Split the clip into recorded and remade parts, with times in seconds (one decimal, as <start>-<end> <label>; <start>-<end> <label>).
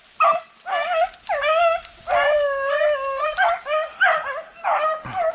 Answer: 0.0-5.3 recorded